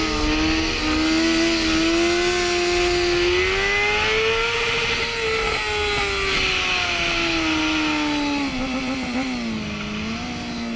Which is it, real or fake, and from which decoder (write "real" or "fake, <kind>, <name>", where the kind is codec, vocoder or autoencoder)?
real